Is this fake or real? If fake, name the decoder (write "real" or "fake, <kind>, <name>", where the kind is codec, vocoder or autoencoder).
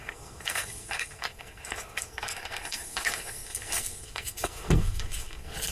fake, codec, SNAC